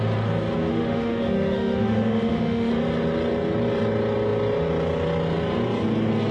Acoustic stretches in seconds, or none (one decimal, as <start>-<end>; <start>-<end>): 0.0-0.7; 2.7-6.3